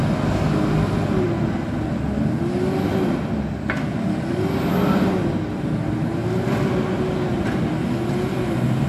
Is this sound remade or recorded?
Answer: recorded